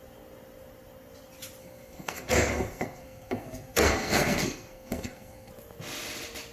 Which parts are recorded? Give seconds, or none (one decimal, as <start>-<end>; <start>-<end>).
0.0-1.6; 5.5-6.5